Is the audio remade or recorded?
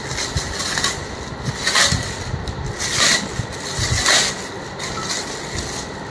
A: recorded